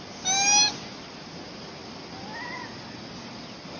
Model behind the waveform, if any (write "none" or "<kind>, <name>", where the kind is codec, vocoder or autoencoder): none